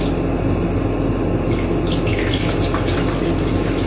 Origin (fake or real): real